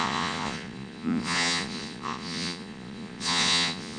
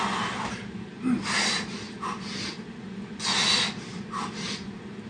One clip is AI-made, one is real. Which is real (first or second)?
second